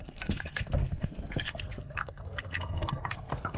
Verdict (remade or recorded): remade